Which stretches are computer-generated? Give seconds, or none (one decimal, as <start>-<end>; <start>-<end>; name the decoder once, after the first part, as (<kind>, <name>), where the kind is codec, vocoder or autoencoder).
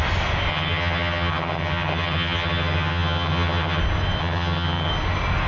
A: 0.5-3.8 (vocoder, HiFi-GAN); 4.2-4.9